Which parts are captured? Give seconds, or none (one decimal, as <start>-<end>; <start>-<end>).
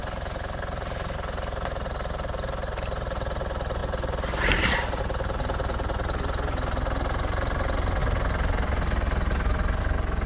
0.0-10.3